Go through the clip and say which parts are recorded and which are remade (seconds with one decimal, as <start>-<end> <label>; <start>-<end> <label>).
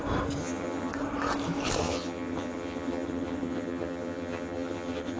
0.0-0.4 recorded; 0.4-0.9 remade; 0.9-1.8 recorded; 1.8-5.2 remade